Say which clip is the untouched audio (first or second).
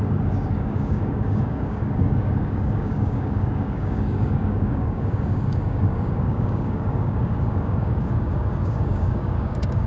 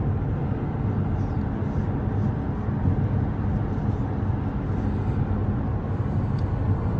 second